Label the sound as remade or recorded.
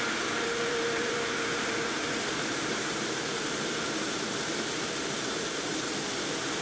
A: remade